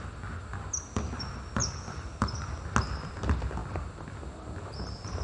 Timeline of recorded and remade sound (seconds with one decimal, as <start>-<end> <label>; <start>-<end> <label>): 0.0-1.6 recorded; 1.6-2.5 remade; 2.5-5.2 recorded